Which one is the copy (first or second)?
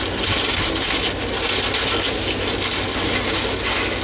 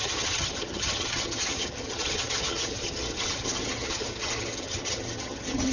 second